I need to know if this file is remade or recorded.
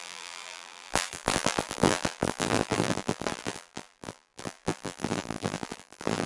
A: remade